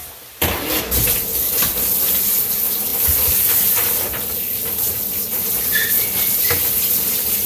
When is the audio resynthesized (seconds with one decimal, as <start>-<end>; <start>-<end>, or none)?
none